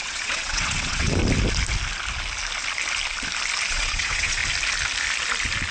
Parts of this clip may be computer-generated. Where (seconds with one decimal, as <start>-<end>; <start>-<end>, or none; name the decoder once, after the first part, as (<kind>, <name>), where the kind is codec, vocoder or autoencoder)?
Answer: 0.0-1.2 (vocoder, WaveNeXt); 3.7-4.4